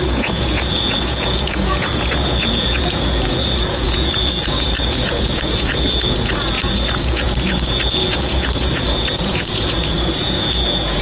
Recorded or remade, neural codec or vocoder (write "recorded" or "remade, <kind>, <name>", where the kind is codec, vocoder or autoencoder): remade, vocoder, Vocos